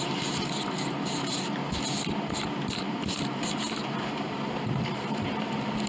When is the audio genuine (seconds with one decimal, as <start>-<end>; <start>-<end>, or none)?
1.6-2.7